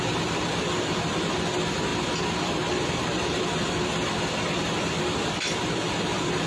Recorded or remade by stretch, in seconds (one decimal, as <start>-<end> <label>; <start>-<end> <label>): 0.0-6.5 recorded